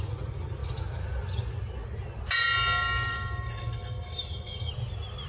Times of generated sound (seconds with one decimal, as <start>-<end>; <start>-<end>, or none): 3.1-4.7